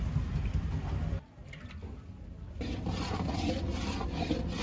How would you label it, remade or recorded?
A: recorded